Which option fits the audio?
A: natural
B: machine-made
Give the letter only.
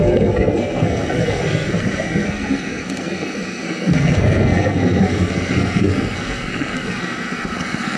B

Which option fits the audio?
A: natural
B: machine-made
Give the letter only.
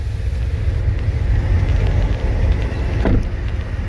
A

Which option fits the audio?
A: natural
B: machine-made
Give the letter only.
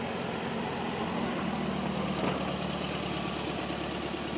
A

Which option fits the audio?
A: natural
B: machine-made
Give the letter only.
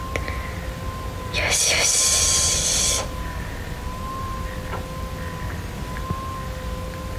A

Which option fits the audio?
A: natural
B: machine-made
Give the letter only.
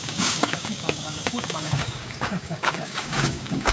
B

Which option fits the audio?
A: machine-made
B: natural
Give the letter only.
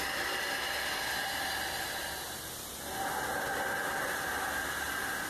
B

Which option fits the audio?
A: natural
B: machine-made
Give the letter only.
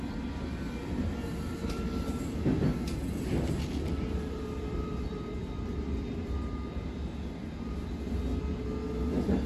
A